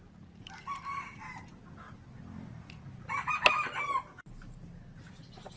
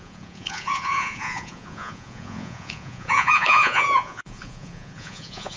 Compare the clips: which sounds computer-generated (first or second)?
second